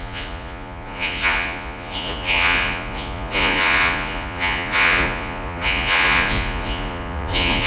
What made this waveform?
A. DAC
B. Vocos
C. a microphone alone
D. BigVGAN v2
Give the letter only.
B